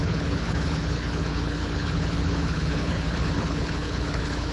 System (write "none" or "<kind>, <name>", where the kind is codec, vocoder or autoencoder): codec, HILCodec